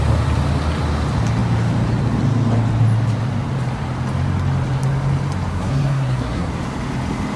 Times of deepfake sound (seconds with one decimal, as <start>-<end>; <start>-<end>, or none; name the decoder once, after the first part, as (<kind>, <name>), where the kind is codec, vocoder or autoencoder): 5.5-6.5 (codec, SNAC)